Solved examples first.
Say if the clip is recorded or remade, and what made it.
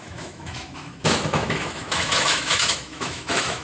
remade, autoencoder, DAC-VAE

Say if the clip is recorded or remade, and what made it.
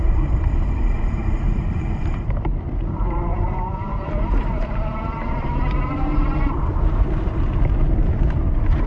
remade, vocoder, BigVGAN v2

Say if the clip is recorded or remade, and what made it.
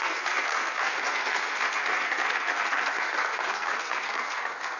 remade, codec, SNAC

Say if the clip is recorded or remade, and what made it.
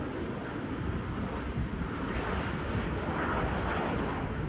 recorded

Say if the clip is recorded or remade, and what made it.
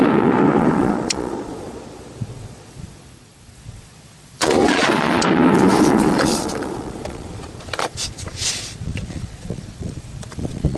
remade, vocoder, Vocos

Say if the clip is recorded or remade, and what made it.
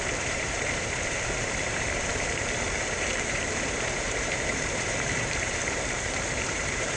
remade, vocoder, BigVGAN v2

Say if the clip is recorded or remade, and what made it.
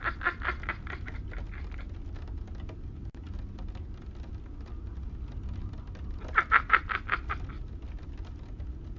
recorded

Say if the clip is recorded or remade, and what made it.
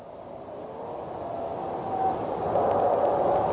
recorded